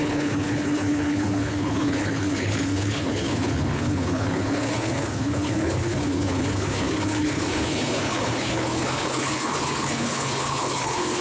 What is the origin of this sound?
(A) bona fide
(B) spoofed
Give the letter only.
B